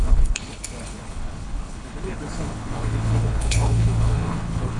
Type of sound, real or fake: fake